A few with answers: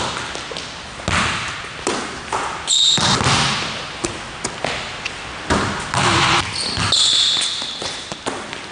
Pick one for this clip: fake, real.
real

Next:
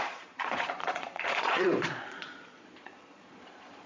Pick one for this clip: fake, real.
fake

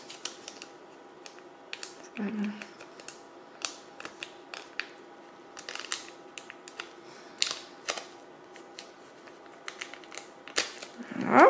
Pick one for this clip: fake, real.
real